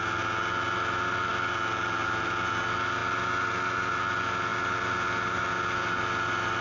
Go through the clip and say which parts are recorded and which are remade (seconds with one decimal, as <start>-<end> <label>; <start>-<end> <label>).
0.0-6.6 recorded